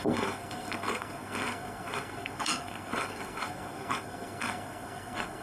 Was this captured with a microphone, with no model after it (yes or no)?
no